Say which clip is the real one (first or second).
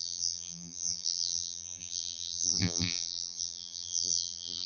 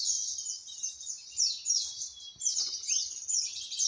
second